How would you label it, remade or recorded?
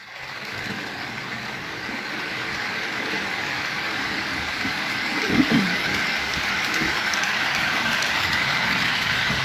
remade